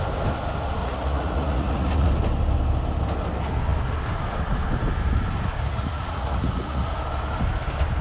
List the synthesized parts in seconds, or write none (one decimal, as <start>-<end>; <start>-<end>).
0.8-2.1; 5.7-6.9

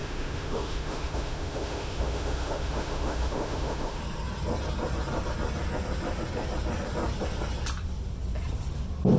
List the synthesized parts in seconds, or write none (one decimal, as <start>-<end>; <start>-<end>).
0.0-4.0

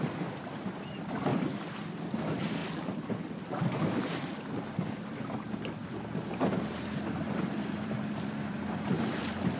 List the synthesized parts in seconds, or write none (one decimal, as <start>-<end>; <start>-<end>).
0.0-1.3; 1.8-2.6; 5.0-9.6

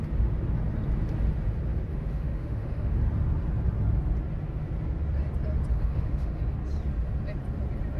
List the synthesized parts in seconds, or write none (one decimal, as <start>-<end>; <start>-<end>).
1.9-3.0; 5.7-6.4

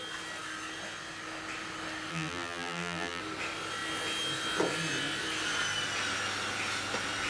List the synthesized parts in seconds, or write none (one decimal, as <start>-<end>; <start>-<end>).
2.1-3.2

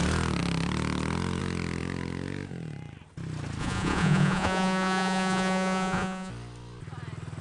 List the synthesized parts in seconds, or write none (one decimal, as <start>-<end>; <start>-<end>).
3.6-6.3

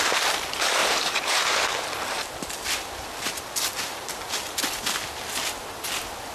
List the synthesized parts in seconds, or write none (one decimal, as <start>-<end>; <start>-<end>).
0.8-4.6